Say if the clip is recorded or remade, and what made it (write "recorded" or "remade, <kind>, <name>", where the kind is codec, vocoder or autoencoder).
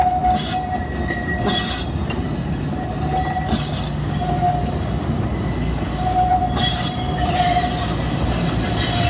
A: recorded